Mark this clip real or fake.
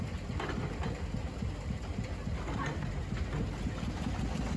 real